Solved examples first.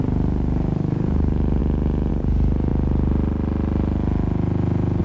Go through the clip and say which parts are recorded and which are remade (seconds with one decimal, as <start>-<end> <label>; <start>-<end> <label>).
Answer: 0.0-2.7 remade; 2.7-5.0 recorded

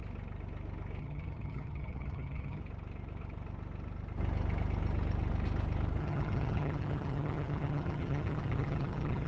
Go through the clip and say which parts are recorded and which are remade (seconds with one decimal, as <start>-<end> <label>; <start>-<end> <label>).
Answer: 0.0-1.0 recorded; 1.0-2.6 remade; 2.6-6.0 recorded; 6.0-9.3 remade

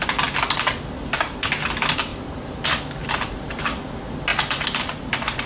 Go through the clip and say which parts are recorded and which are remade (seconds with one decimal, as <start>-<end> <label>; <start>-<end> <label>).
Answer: 0.0-2.1 recorded; 2.1-2.6 remade; 2.6-3.0 recorded; 3.0-3.6 remade; 3.6-5.5 recorded